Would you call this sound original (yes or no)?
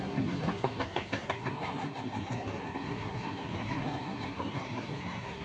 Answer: no